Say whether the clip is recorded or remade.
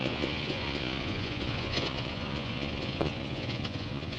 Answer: remade